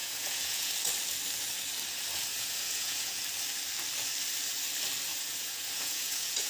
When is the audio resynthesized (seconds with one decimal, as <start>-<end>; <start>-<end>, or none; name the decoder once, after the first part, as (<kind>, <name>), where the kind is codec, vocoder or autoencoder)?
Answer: 0.0-0.7 (vocoder, Vocos); 2.3-3.2; 5.1-6.5